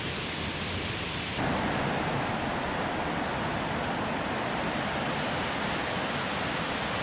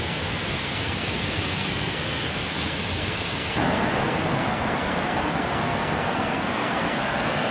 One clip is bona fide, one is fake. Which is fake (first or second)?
second